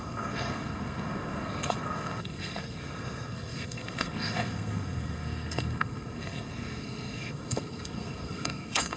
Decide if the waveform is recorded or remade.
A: remade